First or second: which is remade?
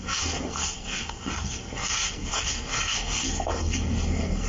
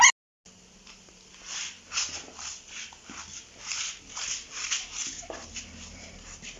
first